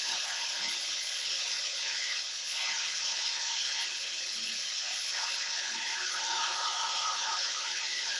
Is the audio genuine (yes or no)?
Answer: no